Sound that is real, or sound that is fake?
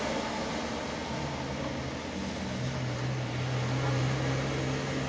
real